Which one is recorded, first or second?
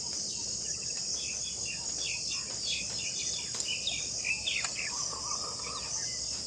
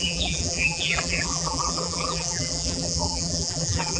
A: first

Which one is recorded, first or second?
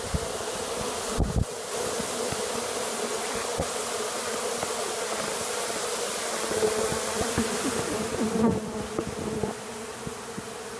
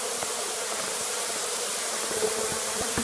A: first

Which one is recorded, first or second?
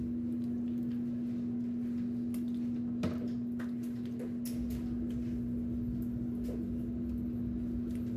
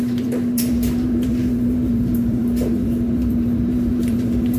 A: first